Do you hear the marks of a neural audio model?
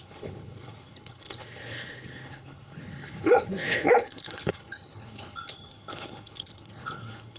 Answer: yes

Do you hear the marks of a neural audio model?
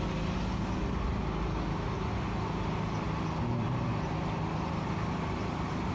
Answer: no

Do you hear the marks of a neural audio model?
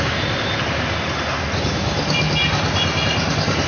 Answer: no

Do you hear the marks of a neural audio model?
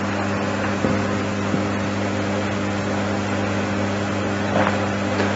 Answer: no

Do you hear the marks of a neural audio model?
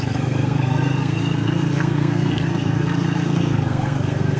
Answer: yes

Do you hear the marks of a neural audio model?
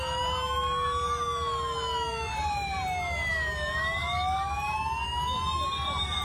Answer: no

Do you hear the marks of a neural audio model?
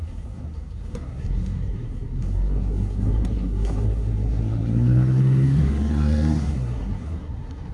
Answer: yes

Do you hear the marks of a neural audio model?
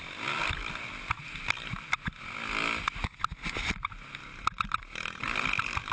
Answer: no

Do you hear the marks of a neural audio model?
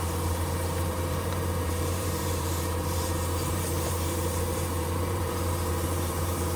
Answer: yes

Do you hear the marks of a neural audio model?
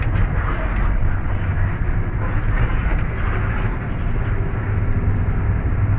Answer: no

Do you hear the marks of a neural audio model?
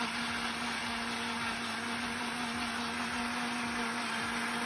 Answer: no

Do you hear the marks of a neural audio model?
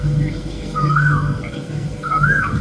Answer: yes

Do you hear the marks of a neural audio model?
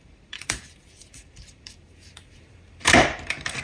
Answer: yes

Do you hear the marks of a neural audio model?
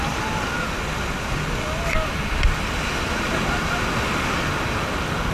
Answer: no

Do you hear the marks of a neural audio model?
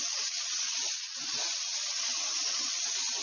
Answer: yes